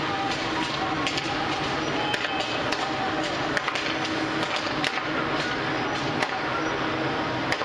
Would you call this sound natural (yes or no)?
yes